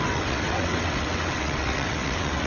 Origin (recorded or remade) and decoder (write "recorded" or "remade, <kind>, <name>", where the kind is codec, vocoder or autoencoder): remade, vocoder, WaveNeXt